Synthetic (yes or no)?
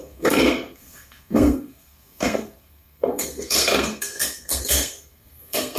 yes